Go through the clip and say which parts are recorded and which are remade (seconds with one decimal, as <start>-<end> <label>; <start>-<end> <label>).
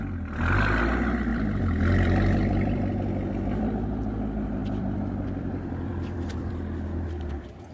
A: 0.0-1.3 recorded; 1.3-3.3 remade; 3.3-4.6 recorded; 4.6-6.5 remade; 6.5-7.7 recorded